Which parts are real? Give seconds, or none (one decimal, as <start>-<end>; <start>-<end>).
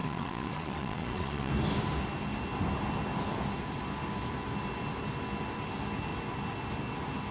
1.5-7.3